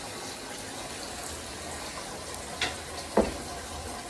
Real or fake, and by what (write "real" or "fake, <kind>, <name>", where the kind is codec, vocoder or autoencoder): real